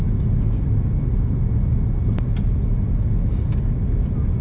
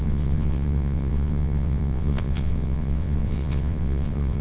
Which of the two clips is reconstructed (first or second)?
second